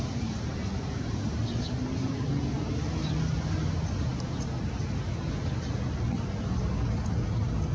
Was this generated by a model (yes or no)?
no